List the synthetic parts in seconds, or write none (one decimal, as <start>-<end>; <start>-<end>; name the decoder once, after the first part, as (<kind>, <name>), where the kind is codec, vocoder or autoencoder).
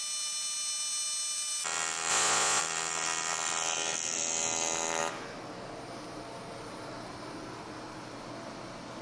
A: 2.1-2.6 (vocoder, Vocos)